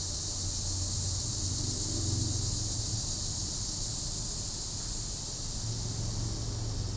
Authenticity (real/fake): real